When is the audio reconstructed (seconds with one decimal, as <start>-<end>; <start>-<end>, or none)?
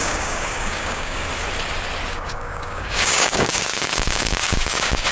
0.0-1.2; 2.1-5.1